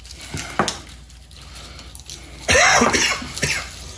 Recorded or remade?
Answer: recorded